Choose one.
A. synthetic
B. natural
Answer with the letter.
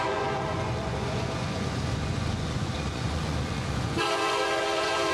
A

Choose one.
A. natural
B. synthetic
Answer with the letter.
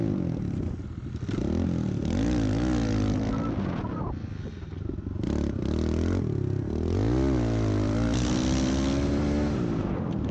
A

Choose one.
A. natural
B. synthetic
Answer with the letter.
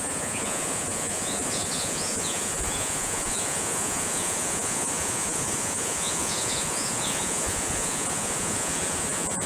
B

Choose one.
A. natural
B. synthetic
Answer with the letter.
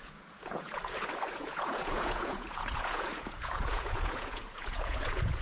B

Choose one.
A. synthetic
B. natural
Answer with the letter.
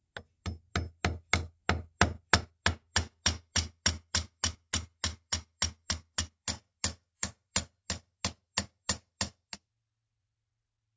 B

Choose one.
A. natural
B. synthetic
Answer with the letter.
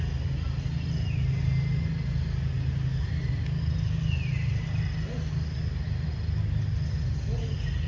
A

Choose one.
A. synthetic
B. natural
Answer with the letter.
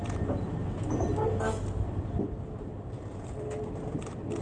B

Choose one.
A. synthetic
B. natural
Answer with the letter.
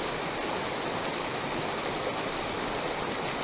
B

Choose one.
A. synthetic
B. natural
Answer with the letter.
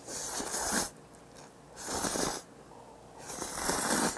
B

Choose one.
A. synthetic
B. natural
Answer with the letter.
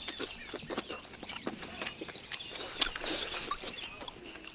B